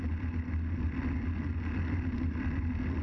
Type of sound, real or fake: real